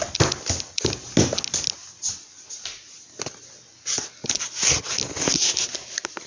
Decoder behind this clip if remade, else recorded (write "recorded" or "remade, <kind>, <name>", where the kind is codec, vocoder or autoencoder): recorded